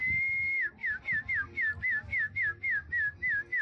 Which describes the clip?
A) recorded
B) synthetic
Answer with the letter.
A